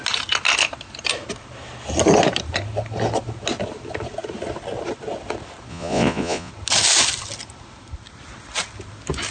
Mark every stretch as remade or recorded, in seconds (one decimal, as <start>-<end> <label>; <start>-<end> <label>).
0.0-5.7 recorded; 5.7-6.5 remade; 6.5-9.3 recorded

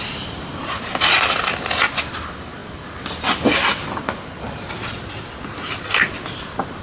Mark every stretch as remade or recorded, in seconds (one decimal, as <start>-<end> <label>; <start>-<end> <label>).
0.0-6.8 recorded

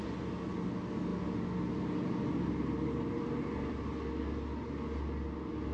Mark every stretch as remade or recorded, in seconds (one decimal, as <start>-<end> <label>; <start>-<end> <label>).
0.0-5.7 recorded

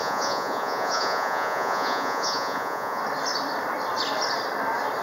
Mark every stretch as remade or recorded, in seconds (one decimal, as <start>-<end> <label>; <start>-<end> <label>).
0.0-3.0 remade; 3.0-5.0 recorded

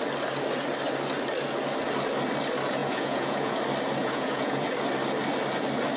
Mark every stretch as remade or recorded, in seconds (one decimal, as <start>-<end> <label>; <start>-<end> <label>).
0.0-2.8 recorded; 2.8-3.6 remade; 3.6-4.0 recorded; 4.0-4.7 remade; 4.7-6.0 recorded